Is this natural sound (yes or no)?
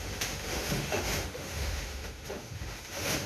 no